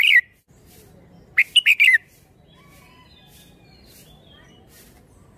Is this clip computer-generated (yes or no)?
no